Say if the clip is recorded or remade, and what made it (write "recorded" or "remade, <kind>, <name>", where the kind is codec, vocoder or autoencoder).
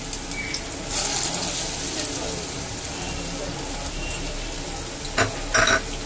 recorded